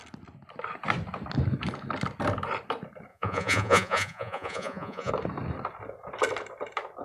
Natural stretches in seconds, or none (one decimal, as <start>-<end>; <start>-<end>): 0.0-3.1; 5.1-7.0